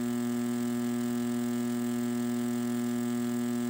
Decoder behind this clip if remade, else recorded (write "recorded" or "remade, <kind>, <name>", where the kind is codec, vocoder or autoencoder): recorded